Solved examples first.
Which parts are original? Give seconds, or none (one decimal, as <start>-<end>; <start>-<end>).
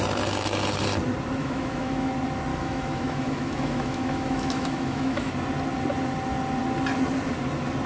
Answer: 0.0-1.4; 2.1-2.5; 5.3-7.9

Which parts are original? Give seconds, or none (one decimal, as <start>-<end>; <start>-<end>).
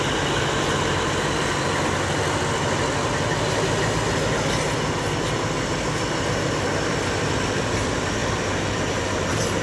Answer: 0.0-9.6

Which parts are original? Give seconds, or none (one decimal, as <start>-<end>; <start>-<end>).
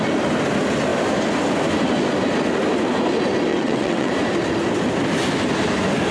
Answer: 0.0-3.5; 4.1-6.1